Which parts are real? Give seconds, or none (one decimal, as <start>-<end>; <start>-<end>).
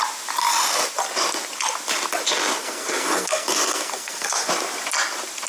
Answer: 0.0-2.6; 4.5-5.5